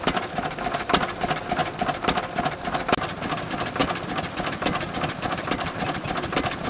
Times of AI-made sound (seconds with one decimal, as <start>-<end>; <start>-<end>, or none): none